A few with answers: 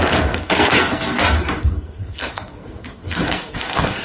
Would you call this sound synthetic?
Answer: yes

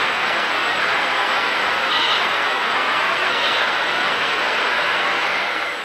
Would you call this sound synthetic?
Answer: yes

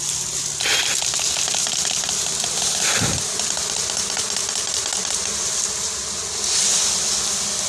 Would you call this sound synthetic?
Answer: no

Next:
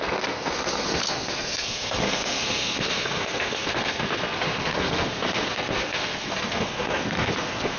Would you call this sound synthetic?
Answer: yes